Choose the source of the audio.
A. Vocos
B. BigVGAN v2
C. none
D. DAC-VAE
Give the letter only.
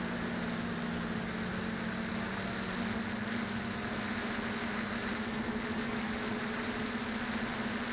C